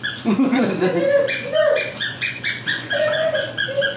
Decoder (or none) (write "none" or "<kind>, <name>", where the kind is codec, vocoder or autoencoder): vocoder, Vocos